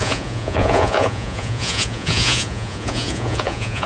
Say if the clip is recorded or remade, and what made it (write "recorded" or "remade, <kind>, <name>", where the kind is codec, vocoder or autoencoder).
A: remade, vocoder, Vocos